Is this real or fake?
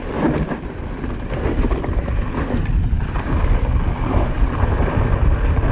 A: real